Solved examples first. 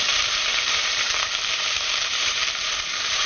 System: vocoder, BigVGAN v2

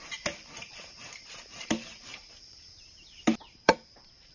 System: vocoder, BigVGAN v2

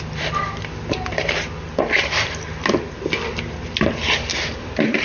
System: vocoder, BigVGAN v2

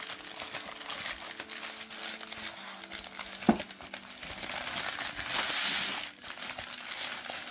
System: none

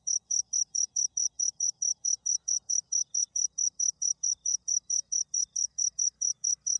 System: vocoder, BigVGAN v2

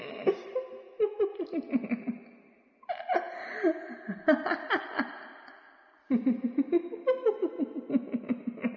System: none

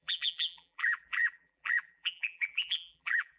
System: vocoder, BigVGAN v2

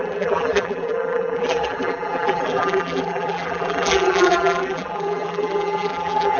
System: vocoder, BigVGAN v2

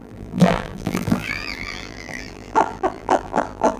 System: vocoder, BigVGAN v2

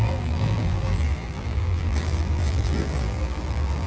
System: vocoder, BigVGAN v2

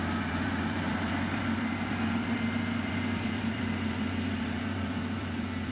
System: vocoder, BigVGAN v2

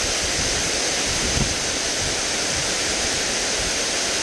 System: vocoder, BigVGAN v2